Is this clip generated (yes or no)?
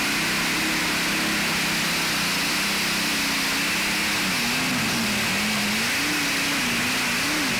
no